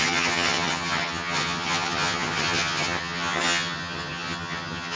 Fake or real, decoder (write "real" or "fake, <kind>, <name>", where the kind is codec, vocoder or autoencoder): fake, vocoder, HiFi-GAN